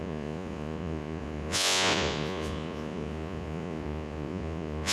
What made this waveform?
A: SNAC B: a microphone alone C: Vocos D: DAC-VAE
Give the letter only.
C